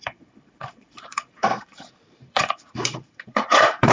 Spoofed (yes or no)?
yes